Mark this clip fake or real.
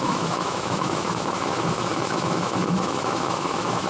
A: fake